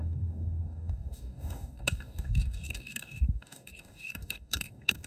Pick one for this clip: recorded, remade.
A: remade